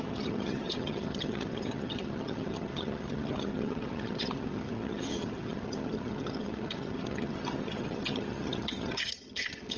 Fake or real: fake